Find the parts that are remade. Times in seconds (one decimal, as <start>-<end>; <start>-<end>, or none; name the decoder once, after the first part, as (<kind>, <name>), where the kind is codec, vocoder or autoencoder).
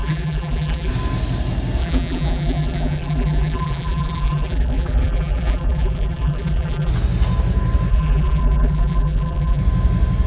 0.0-0.9 (vocoder, BigVGAN v2); 1.8-6.9; 7.9-9.6